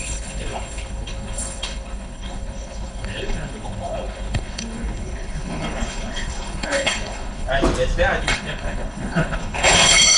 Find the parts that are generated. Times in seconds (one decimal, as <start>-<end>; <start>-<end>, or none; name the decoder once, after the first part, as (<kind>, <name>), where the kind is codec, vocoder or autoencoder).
0.0-7.5 (codec, HILCodec); 8.2-10.2